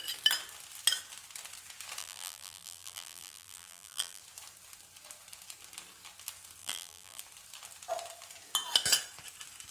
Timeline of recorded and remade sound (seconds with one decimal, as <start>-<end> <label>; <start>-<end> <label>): 0.0-2.0 recorded; 2.0-4.2 remade; 4.2-6.6 recorded; 6.6-7.2 remade; 7.2-9.7 recorded